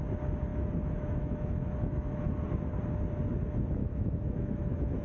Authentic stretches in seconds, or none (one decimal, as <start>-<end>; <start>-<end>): 0.0-0.5; 2.2-3.8